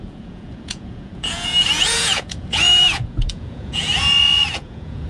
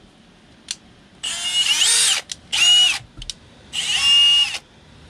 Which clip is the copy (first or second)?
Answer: first